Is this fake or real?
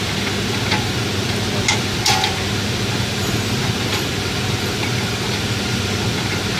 fake